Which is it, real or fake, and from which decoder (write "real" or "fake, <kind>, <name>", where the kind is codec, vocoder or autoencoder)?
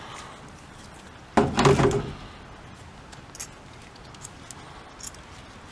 real